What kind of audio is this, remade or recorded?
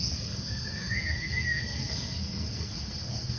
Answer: remade